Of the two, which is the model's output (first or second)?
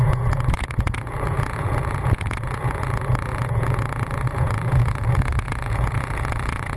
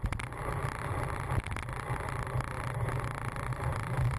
first